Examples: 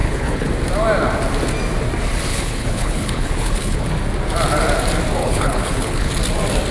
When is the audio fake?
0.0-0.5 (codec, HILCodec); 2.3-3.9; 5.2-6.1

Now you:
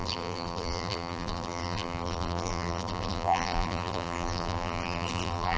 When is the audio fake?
0.0-5.6 (vocoder, BigVGAN v2)

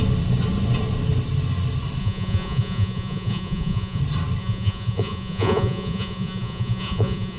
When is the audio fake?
2.0-4.0 (vocoder, Vocos); 4.4-7.4